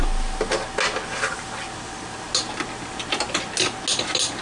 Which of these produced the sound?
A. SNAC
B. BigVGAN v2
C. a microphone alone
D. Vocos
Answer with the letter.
C